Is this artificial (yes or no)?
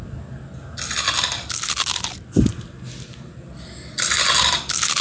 no